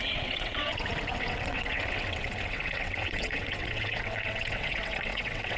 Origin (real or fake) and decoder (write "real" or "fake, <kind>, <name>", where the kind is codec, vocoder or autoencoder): fake, vocoder, WaveNeXt